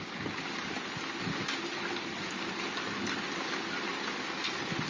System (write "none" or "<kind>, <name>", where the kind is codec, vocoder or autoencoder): none